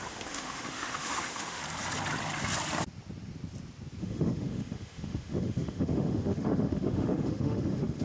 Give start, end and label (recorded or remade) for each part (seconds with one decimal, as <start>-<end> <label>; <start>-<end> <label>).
0.0-1.6 remade; 1.6-4.0 recorded; 4.0-8.0 remade